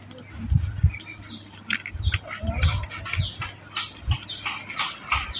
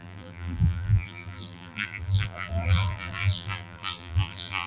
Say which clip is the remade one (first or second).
second